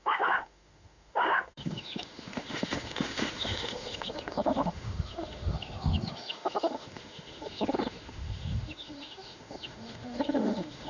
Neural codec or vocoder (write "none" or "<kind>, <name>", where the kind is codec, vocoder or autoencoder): autoencoder, DAC-VAE